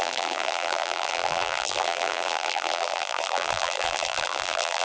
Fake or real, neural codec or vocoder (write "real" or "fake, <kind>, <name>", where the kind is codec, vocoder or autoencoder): fake, vocoder, BigVGAN v2